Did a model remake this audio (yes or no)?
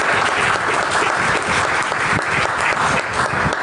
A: no